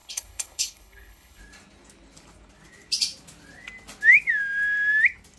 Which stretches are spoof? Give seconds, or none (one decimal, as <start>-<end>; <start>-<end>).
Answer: 0.0-1.4

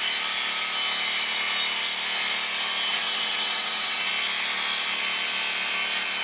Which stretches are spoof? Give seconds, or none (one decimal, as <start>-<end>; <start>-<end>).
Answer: 2.9-4.1

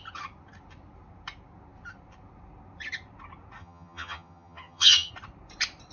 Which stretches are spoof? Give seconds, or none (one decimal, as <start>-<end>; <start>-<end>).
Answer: 3.6-5.1

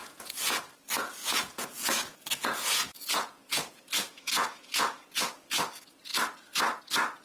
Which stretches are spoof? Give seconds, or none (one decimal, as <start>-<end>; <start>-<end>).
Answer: 0.0-0.6; 1.2-5.5

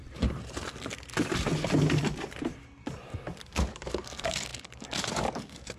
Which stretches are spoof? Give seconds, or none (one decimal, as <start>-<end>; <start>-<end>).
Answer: 3.5-5.8

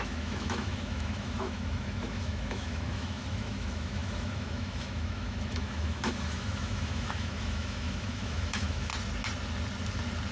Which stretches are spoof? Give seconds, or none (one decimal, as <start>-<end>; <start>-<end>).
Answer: 0.0-8.9

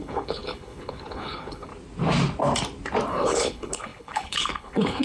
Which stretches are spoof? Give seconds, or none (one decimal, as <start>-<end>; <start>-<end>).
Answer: 0.0-1.7; 3.1-5.0

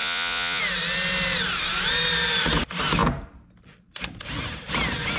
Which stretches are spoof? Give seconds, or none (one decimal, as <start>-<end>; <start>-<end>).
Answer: 0.0-0.6